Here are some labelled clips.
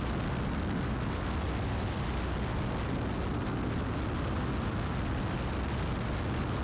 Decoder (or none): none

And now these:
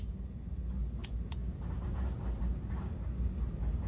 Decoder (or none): none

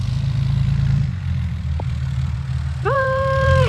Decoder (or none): vocoder, BigVGAN v2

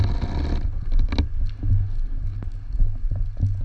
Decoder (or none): none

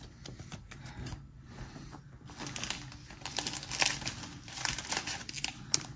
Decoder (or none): none